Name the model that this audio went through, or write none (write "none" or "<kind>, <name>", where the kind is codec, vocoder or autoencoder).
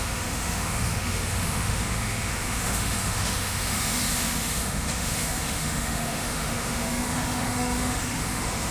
autoencoder, DAC-VAE